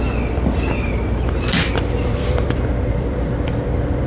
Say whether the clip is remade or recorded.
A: remade